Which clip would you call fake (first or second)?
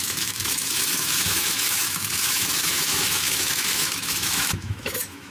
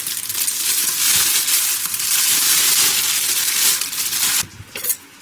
first